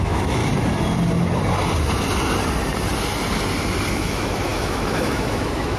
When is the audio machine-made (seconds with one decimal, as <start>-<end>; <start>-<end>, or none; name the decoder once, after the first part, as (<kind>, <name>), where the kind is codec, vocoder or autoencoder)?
0.0-0.4 (autoencoder, DAC-VAE); 3.9-5.8